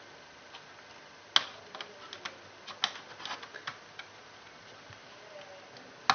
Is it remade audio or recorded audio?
recorded